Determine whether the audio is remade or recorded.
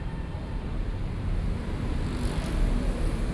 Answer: remade